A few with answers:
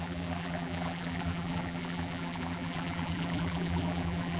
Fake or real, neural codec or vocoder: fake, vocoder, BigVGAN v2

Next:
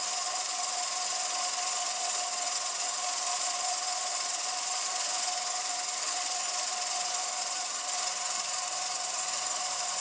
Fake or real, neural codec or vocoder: fake, vocoder, Vocos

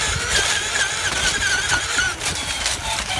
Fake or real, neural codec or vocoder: real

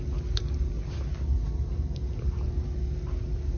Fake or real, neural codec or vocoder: real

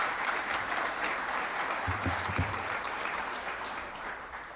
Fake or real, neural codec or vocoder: fake, vocoder, BigVGAN v2